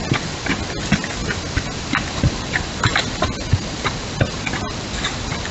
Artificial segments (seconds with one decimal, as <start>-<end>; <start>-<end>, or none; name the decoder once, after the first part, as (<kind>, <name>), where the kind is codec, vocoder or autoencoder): none